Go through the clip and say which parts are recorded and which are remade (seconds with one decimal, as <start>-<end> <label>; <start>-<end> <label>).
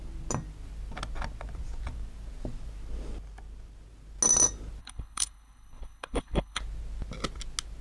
0.0-4.8 recorded; 4.8-6.6 remade; 6.6-7.8 recorded